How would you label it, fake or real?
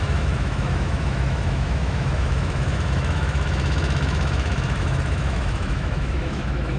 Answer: fake